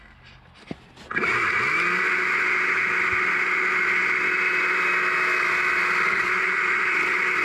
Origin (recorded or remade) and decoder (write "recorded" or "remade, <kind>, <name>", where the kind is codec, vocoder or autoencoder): recorded